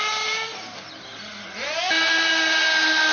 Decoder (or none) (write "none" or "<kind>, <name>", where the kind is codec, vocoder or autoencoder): none